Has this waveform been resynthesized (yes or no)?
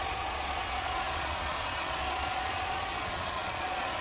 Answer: yes